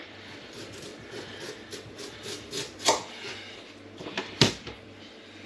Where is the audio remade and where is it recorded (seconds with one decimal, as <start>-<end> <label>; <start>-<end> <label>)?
0.0-0.9 remade; 0.9-4.2 recorded; 4.2-5.5 remade